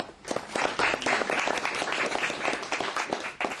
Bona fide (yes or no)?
yes